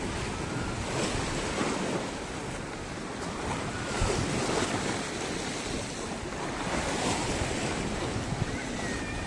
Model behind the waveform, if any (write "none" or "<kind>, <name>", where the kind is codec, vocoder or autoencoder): none